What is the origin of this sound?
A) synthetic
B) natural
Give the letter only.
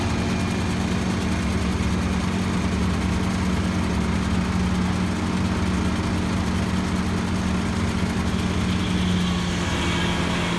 B